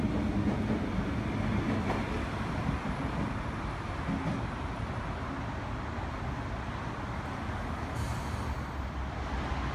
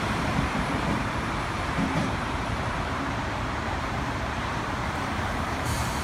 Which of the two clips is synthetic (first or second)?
second